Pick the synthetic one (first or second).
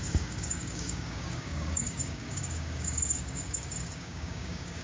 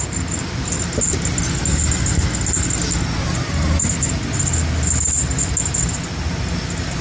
first